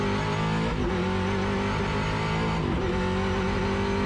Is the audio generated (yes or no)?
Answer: no